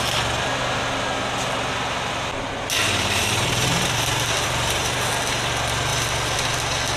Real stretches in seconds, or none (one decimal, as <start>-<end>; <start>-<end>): 0.0-2.8; 5.1-5.9; 6.6-7.0